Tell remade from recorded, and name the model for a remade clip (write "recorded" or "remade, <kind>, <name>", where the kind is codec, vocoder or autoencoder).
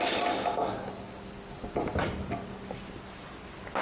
recorded